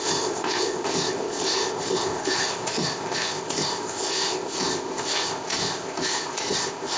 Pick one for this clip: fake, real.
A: fake